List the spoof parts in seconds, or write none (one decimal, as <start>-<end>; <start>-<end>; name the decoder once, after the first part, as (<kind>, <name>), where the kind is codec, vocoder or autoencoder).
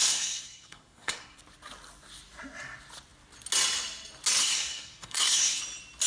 0.0-1.4 (codec, SNAC); 4.4-5.6